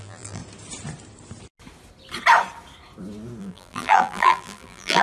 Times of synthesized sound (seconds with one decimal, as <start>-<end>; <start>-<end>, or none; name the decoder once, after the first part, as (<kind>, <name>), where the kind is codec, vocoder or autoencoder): 0.0-0.4 (vocoder, BigVGAN v2); 3.4-5.0